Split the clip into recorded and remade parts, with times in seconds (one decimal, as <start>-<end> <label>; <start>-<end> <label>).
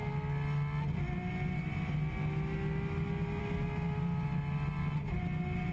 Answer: 0.0-5.7 recorded